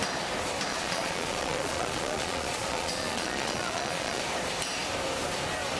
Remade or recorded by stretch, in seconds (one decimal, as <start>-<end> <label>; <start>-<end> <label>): 0.0-0.7 recorded; 0.7-4.2 remade; 4.2-5.8 recorded